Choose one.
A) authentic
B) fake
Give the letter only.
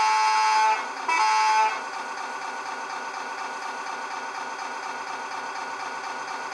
A